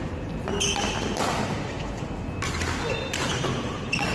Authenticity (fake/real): real